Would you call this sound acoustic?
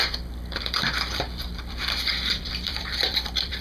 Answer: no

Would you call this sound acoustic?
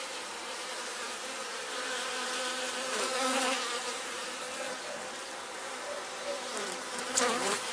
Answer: no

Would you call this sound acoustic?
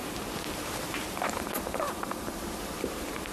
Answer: no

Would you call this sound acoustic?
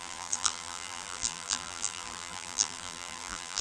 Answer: no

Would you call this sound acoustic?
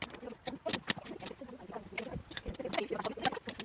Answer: yes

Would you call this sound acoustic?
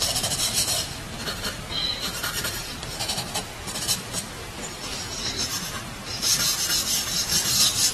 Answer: no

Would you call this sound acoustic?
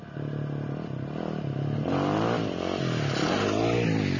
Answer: yes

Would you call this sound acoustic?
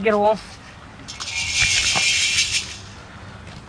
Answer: yes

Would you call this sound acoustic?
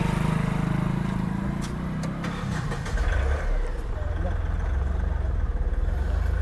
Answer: yes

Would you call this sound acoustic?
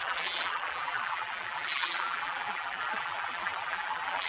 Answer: no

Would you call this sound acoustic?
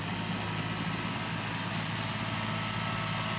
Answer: yes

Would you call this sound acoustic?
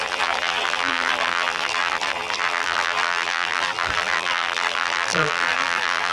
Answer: no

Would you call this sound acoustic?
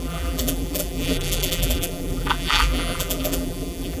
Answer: no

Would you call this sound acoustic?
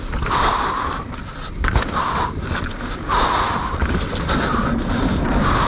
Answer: no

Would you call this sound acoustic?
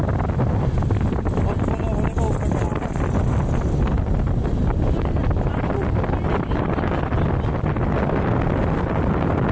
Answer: yes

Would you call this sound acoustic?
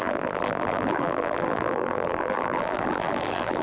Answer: no